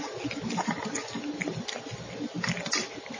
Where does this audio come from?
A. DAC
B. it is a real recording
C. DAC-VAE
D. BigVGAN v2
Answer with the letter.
B